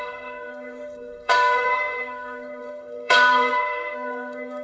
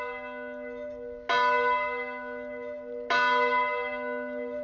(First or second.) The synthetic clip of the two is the first